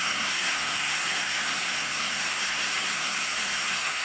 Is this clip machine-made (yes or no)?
yes